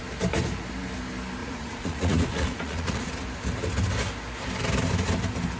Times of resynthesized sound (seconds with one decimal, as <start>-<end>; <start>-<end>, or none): 1.4-3.1